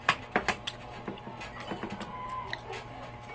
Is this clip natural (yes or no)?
yes